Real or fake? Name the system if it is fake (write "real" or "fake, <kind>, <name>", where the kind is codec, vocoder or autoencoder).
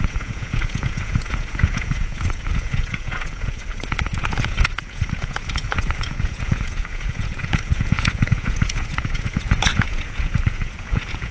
fake, vocoder, Vocos